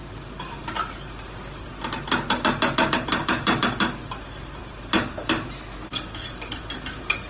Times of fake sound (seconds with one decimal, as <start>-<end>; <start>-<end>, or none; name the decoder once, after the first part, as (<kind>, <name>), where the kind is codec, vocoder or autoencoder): none